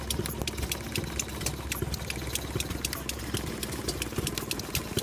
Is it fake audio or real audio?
real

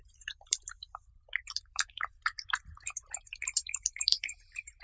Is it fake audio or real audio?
fake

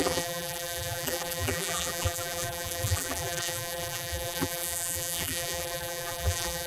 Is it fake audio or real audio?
fake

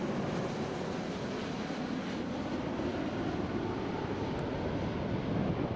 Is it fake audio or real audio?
real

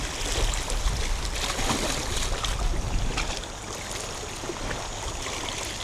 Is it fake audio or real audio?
real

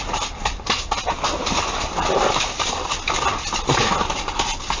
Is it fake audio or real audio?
real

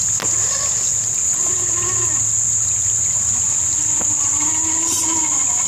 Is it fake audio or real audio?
real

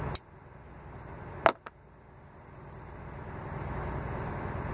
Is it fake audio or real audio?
real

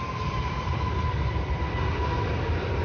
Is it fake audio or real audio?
real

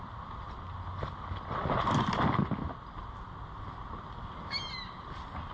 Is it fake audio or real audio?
real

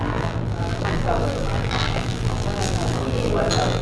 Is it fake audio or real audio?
fake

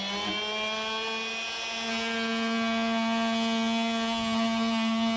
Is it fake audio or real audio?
real